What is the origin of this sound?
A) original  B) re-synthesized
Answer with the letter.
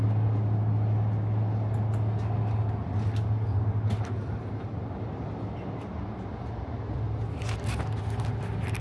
A